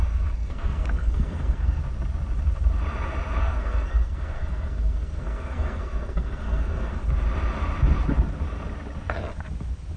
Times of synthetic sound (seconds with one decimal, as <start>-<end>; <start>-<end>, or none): 0.0-1.8; 3.4-7.0